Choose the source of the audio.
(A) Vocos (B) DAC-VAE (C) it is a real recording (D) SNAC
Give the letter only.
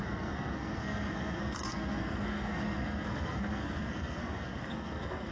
D